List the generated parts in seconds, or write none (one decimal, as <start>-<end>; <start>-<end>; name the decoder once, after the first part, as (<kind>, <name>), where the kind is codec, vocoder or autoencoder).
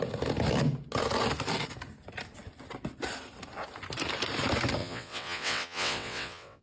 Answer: 4.8-6.6 (vocoder, WaveNeXt)